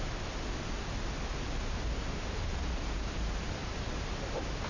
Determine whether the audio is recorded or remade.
recorded